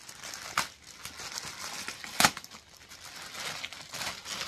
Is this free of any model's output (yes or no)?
yes